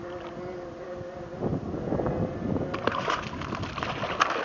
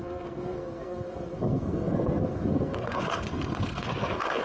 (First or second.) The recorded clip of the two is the first